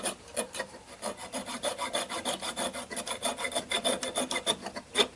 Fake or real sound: real